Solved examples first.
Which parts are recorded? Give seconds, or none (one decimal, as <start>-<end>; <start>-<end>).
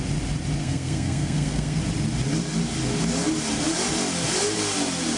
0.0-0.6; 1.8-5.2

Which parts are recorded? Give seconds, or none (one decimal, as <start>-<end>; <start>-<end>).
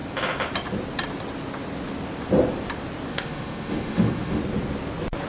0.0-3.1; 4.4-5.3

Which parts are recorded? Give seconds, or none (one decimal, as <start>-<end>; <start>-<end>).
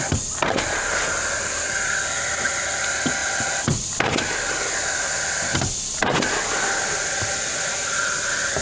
0.0-8.6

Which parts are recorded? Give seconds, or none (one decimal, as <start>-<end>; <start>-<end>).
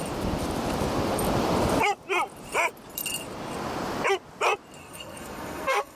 0.0-4.8